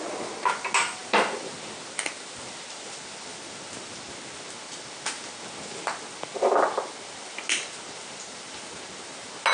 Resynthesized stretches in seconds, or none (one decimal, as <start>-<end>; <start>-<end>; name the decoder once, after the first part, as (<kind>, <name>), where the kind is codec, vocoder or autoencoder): none